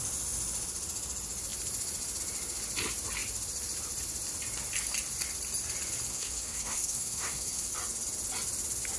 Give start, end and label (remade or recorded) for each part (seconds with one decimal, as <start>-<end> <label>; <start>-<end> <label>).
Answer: 0.0-6.1 recorded; 6.1-7.7 remade; 7.7-9.0 recorded